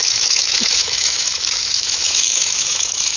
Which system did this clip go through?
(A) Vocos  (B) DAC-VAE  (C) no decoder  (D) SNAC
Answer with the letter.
B